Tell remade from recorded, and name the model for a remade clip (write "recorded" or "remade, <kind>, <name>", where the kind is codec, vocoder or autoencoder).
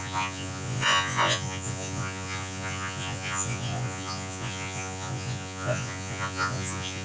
remade, vocoder, Vocos